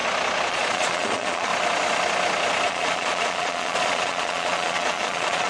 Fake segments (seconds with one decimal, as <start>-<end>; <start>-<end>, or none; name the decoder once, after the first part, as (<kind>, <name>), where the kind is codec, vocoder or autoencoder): 0.5-1.5 (vocoder, Vocos); 2.7-5.5